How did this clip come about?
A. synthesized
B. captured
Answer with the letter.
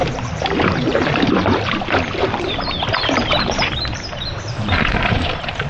A